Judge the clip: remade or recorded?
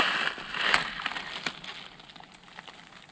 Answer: recorded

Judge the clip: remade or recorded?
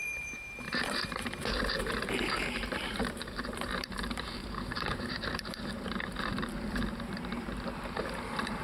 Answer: remade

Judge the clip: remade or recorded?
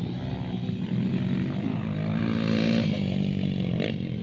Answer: recorded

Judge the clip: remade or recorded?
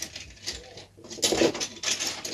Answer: recorded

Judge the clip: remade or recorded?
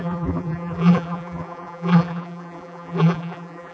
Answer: remade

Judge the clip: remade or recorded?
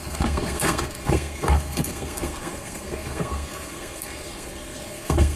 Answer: remade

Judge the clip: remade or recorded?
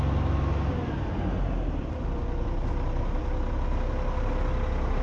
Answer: recorded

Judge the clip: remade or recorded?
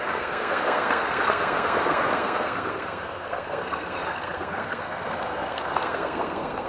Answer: remade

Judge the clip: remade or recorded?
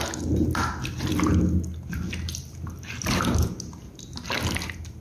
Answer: recorded